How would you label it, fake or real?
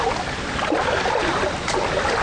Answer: real